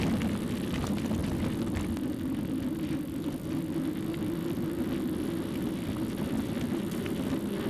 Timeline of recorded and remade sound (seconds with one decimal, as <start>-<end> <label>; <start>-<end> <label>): 0.0-7.7 recorded